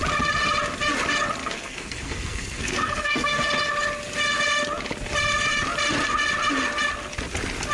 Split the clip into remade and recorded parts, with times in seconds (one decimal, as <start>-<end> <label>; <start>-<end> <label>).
0.0-1.4 recorded; 1.4-3.5 remade; 3.5-7.7 recorded